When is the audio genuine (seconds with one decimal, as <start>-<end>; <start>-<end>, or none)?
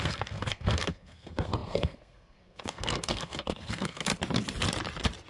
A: 4.1-5.3